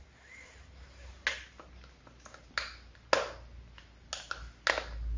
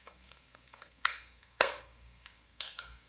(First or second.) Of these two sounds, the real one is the first